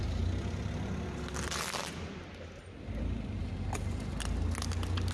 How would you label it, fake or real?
real